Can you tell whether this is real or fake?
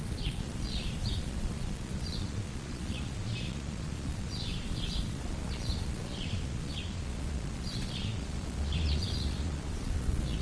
fake